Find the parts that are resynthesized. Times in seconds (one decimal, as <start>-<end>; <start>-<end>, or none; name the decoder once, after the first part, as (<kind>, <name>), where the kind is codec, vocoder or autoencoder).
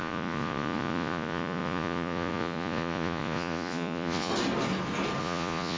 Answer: 0.0-4.3 (vocoder, Vocos); 5.2-5.8